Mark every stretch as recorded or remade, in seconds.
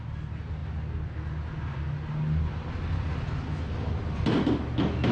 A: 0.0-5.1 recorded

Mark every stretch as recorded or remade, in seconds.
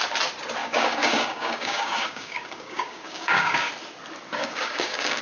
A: 0.0-0.6 recorded; 0.6-3.7 remade; 3.7-4.4 recorded; 4.4-5.2 remade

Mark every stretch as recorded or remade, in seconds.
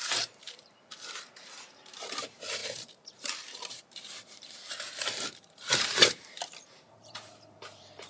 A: 0.0-8.1 remade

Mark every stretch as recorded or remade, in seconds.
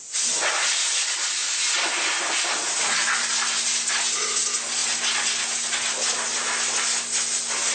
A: 0.0-7.7 recorded